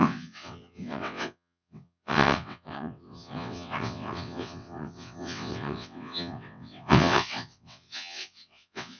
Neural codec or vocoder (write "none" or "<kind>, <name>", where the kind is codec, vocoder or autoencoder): vocoder, WaveNeXt